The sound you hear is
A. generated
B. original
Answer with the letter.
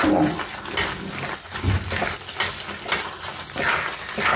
B